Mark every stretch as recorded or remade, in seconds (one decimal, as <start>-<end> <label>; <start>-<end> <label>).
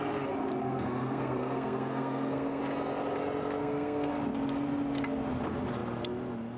0.0-0.6 recorded; 0.6-2.6 remade; 2.6-3.6 recorded; 3.6-4.1 remade; 4.1-6.6 recorded